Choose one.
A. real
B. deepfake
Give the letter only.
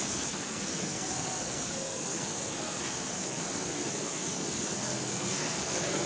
B